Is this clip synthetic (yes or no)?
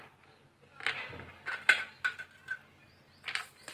no